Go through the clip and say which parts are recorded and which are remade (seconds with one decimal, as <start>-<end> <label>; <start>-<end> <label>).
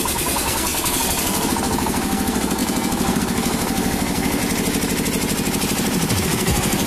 0.0-4.4 remade; 4.4-6.2 recorded; 6.2-6.9 remade